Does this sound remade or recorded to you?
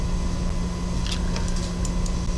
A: recorded